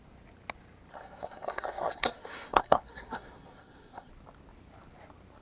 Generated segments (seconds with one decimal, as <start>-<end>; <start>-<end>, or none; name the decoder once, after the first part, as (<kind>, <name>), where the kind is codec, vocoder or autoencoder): 0.9-4.1 (codec, SNAC)